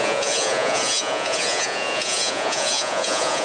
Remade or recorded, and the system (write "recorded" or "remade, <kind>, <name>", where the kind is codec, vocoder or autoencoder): remade, vocoder, Vocos